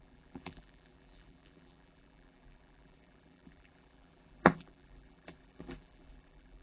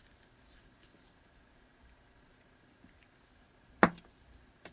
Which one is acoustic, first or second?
second